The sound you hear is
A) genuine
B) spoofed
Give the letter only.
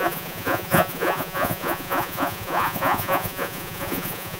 B